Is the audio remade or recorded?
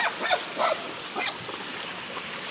recorded